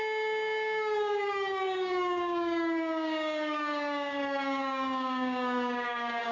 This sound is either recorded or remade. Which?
remade